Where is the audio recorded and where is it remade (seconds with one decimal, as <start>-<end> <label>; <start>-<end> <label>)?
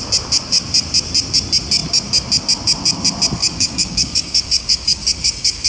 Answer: 0.0-3.4 recorded; 3.4-5.7 remade